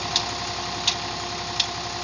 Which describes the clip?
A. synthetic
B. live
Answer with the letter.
B